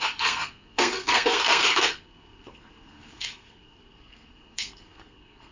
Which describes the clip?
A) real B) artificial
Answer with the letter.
B